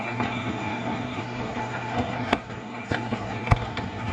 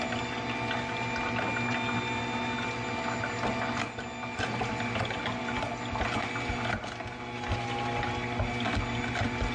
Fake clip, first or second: first